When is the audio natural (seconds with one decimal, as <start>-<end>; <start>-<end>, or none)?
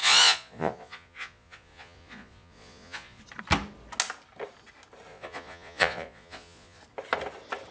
3.2-5.1; 6.8-7.7